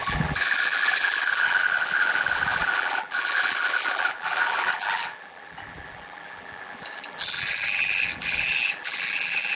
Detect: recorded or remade remade